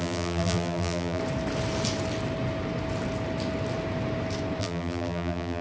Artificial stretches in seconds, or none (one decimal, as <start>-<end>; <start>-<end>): 0.0-1.2; 4.6-5.6

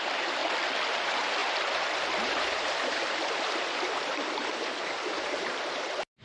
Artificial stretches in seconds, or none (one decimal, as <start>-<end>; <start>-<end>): 0.0-0.4; 0.9-6.2